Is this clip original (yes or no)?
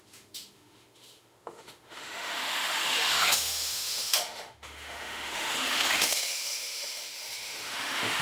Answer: no